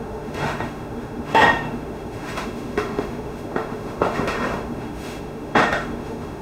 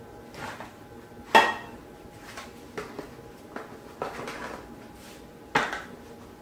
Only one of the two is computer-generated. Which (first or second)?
first